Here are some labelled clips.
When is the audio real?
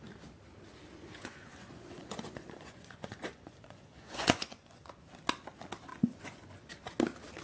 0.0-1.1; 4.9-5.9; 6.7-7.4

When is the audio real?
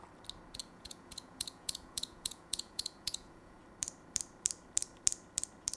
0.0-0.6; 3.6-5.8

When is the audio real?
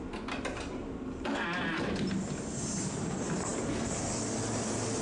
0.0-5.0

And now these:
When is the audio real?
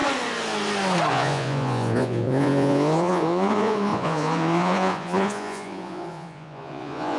0.0-1.1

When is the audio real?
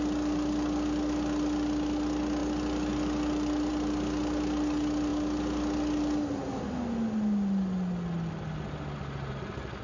0.0-9.8